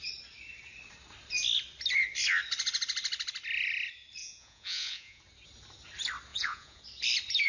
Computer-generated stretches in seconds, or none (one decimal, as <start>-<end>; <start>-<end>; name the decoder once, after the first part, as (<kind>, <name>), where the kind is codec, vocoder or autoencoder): 4.2-5.2 (vocoder, Vocos); 6.3-6.8